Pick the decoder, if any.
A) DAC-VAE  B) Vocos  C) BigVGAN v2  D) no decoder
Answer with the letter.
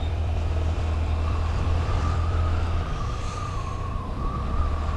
C